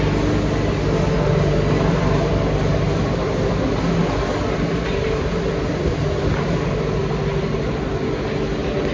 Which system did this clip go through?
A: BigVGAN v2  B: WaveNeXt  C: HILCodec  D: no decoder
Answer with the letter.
D